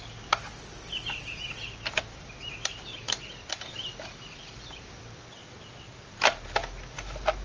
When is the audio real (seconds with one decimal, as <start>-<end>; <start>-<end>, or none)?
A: 0.0-7.4